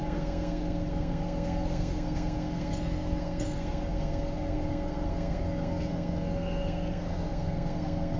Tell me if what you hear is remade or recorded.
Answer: remade